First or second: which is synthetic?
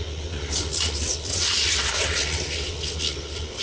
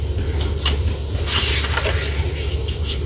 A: first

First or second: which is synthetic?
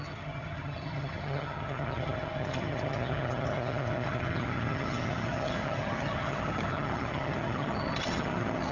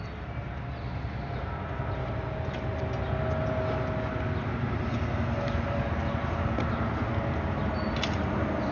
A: first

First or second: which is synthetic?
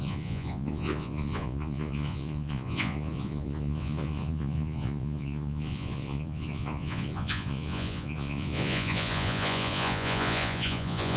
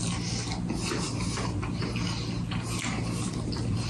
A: first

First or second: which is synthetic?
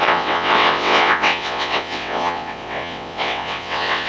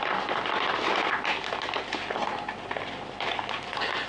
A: first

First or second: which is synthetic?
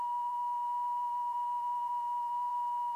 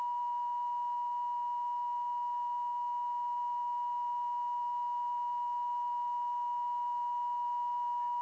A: first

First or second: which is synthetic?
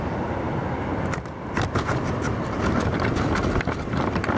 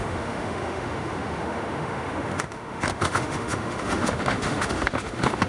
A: second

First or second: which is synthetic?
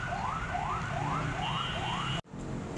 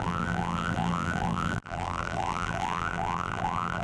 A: second